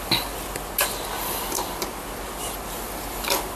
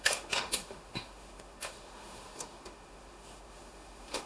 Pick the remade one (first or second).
second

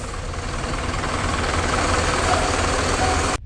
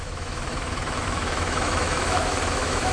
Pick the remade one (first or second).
second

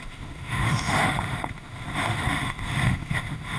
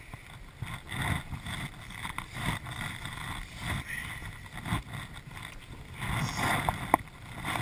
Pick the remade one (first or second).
first